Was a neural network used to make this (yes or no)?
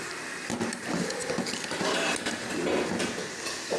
no